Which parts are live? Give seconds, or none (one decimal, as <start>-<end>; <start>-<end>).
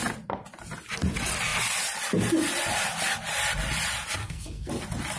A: 0.0-4.2; 4.7-5.2